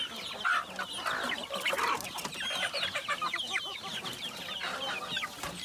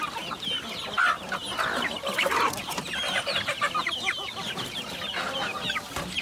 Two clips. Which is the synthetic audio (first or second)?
second